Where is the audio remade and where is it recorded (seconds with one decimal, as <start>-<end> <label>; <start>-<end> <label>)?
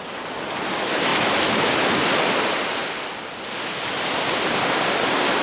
0.0-5.4 recorded